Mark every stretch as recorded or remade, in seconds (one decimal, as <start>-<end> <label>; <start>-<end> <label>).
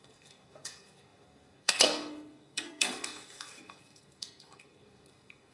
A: 0.0-5.5 remade